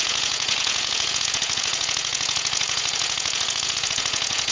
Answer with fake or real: fake